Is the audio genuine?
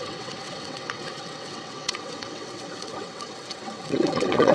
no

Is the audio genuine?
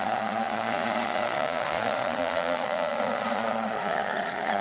no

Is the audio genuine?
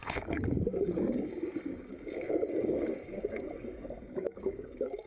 no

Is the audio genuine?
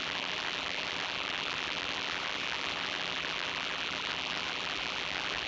no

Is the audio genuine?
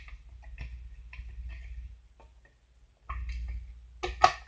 yes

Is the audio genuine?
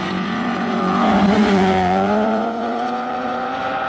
no